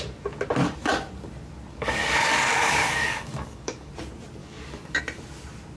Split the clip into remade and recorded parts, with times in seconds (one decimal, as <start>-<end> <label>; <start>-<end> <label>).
0.0-1.7 recorded; 1.7-3.9 remade; 3.9-4.4 recorded; 4.4-5.0 remade; 5.0-5.8 recorded